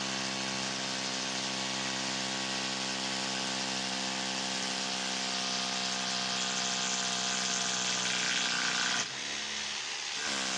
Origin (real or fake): real